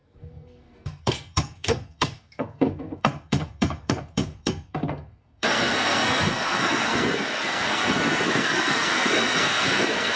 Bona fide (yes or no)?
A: no